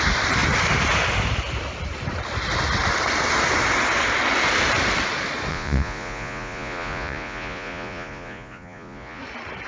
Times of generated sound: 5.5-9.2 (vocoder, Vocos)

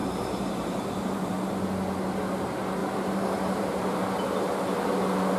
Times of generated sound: 0.0-1.3 (vocoder, BigVGAN v2); 2.8-5.0

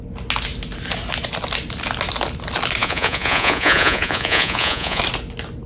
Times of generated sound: 2.8-5.0 (vocoder, Vocos)

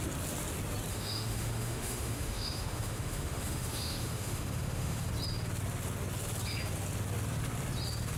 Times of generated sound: 0.9-5.1 (autoencoder, DAC-VAE)